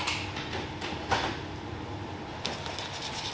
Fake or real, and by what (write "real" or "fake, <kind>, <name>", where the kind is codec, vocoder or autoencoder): real